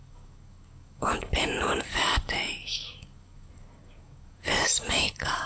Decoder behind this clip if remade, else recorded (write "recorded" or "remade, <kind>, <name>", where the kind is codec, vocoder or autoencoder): remade, codec, DAC